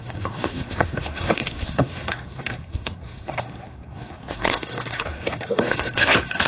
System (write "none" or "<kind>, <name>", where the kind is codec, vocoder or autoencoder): codec, SNAC